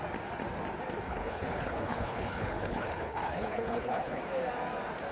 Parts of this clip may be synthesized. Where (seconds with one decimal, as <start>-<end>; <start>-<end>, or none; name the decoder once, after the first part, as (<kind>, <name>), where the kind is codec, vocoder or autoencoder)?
1.1-4.2 (codec, HILCodec)